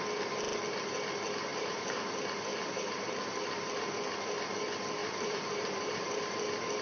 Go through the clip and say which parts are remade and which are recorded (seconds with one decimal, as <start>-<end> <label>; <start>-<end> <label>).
0.0-1.5 recorded; 1.5-2.0 remade; 2.0-2.5 recorded; 2.5-3.1 remade; 3.1-5.0 recorded; 5.0-6.2 remade; 6.2-6.8 recorded